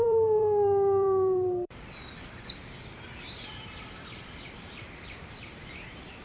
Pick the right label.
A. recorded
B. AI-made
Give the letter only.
B